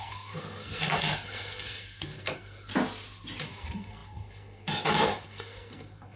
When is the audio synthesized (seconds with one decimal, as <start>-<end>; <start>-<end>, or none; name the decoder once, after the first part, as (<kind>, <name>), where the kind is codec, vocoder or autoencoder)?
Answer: 0.0-2.7 (codec, SNAC); 3.4-6.2